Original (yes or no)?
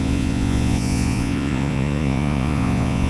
no